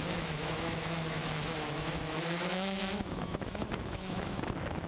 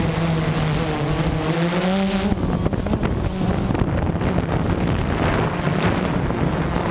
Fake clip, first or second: first